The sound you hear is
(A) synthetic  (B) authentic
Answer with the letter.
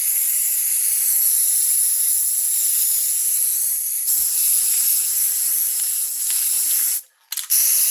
B